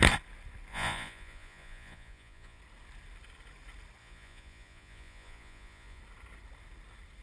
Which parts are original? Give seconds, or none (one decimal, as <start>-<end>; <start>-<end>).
0.0-0.7; 2.6-4.0; 6.0-7.2